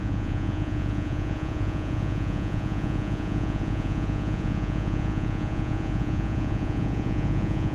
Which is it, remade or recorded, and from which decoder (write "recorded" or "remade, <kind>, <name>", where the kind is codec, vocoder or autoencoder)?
remade, vocoder, Vocos